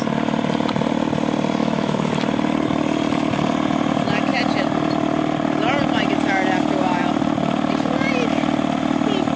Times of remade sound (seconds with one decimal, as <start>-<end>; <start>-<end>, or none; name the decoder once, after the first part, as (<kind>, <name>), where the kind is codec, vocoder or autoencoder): 1.6-2.1 (autoencoder, DAC-VAE)